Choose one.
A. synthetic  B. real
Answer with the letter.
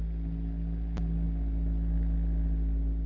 B